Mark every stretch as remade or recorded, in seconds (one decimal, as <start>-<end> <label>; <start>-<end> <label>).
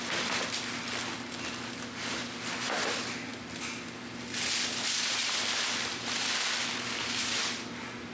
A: 0.0-8.1 recorded